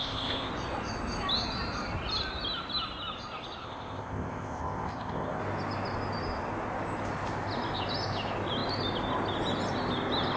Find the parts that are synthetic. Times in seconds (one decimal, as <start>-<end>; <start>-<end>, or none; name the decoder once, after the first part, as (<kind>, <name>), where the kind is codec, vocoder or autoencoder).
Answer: 0.0-0.5 (codec, ZipCodec); 3.6-5.4